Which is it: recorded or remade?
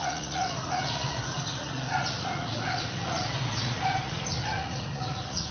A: remade